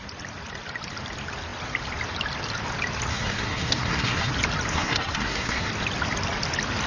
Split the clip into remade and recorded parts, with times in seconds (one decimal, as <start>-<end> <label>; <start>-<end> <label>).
0.0-3.1 recorded; 3.1-4.3 remade; 4.3-4.7 recorded; 4.7-5.7 remade; 5.7-6.9 recorded

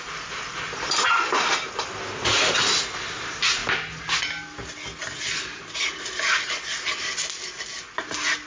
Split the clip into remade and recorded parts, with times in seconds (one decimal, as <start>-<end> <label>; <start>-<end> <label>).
0.0-8.5 recorded

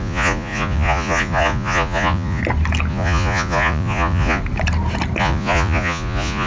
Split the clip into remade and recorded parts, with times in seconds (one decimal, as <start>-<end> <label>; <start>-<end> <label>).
0.0-2.4 remade; 2.4-2.9 recorded; 2.9-4.4 remade; 4.4-5.2 recorded; 5.2-6.5 remade

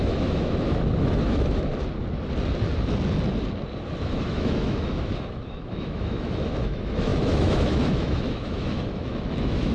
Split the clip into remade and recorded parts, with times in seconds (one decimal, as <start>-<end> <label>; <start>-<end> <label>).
0.0-1.7 remade; 1.7-4.0 recorded; 4.0-9.7 remade

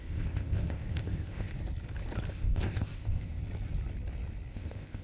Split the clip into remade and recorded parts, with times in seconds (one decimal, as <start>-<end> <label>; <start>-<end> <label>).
0.0-1.5 remade; 1.5-2.3 recorded; 2.3-3.4 remade; 3.4-4.5 recorded; 4.5-5.0 remade

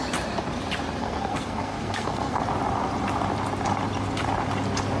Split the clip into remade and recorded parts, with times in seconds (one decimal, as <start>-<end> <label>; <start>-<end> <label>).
0.0-1.0 recorded; 1.0-2.4 remade; 2.4-5.0 recorded

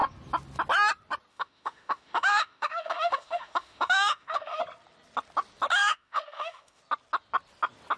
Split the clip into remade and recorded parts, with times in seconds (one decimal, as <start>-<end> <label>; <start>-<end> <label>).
0.0-1.3 recorded; 1.3-4.6 remade; 4.6-5.7 recorded; 5.7-6.8 remade; 6.8-8.0 recorded